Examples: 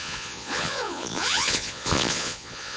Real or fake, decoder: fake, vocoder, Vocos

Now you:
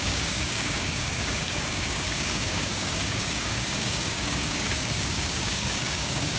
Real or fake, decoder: fake, codec, DAC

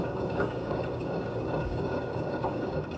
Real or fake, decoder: fake, codec, DAC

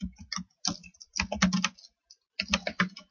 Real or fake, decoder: real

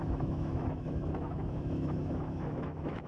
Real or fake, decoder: fake, autoencoder, DAC-VAE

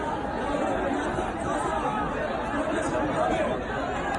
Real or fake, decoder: real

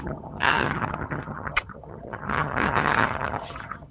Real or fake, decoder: fake, vocoder, HiFi-GAN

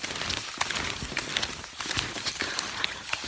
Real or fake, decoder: real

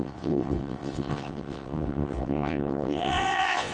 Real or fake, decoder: fake, vocoder, WaveNeXt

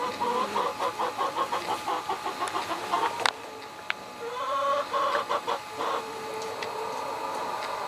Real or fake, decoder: real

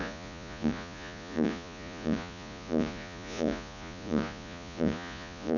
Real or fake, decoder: fake, vocoder, Vocos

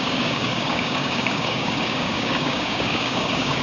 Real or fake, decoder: fake, codec, DAC